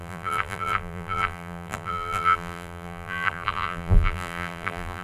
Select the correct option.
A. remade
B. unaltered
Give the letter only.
A